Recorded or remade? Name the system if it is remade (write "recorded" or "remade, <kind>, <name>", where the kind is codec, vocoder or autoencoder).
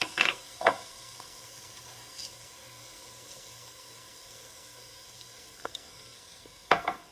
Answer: remade, codec, SNAC